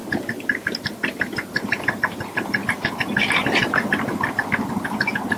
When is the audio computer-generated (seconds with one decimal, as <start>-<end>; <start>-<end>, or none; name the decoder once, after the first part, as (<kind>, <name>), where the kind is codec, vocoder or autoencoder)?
none